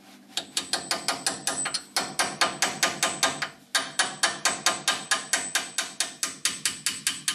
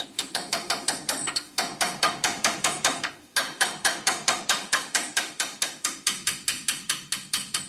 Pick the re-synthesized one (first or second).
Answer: second